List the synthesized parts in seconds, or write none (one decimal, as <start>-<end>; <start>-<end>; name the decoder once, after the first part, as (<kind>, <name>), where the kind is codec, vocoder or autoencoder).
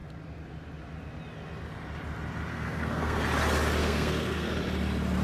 2.5-3.2 (codec, SNAC); 3.8-4.5